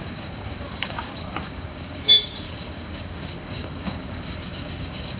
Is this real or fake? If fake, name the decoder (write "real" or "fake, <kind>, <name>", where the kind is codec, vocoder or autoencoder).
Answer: fake, codec, DAC